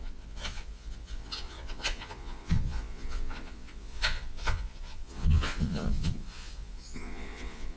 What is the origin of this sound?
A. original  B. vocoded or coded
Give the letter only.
B